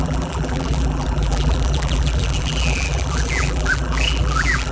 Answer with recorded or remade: remade